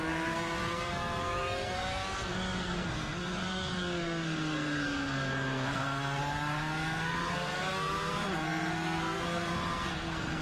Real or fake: fake